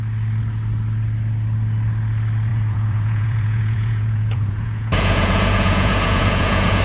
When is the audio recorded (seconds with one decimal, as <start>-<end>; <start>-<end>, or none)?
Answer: 0.0-2.5